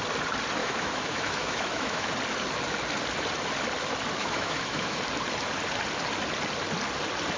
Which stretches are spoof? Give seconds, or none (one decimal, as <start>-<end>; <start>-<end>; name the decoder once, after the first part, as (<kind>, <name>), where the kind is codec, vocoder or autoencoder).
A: 0.6-2.1 (autoencoder, DAC-VAE); 4.2-5.0